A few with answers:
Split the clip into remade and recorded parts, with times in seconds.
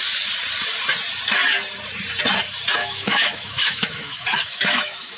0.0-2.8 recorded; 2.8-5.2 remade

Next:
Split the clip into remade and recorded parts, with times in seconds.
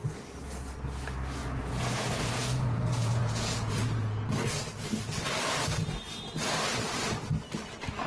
0.0-1.4 recorded; 1.4-4.3 remade; 4.3-8.1 recorded